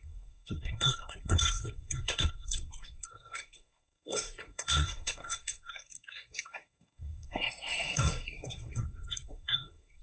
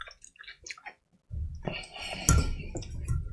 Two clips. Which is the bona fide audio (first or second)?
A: second